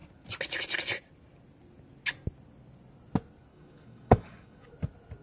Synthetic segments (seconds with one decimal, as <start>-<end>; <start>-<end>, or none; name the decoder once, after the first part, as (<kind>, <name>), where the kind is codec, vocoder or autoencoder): 3.5-4.7 (codec, DAC)